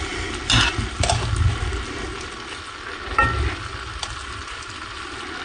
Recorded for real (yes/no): yes